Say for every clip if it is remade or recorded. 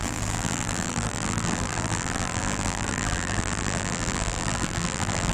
remade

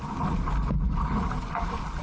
recorded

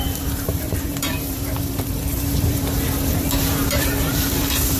remade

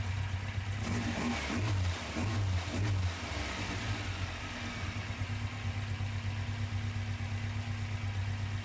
recorded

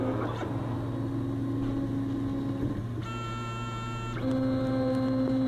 recorded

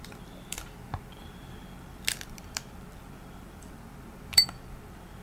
remade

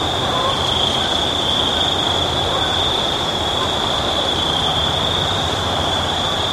remade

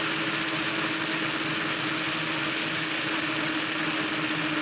recorded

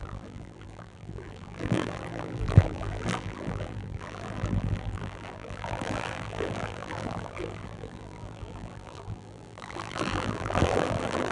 remade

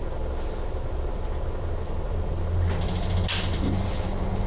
recorded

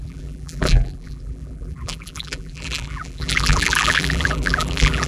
remade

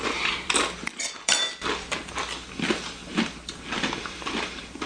remade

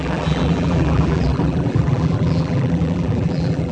remade